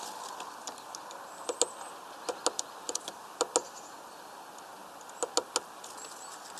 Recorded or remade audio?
recorded